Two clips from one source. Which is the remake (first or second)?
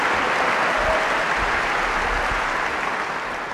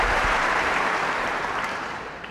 second